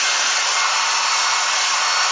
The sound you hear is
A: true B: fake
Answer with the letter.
A